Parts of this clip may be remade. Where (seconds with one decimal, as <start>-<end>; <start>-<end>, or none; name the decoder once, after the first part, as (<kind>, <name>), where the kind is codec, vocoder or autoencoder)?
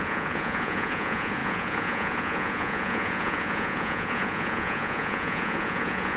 0.0-6.2 (vocoder, Vocos)